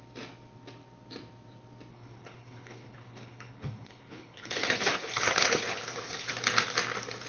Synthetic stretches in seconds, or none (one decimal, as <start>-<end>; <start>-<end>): 1.9-6.3